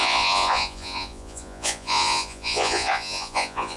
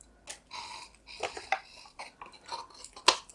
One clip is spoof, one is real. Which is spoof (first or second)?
first